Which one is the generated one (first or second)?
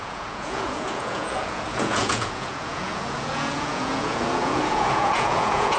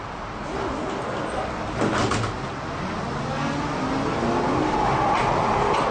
first